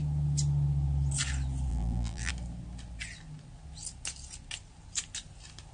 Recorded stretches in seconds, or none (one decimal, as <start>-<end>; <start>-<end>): 0.0-1.7; 2.3-5.7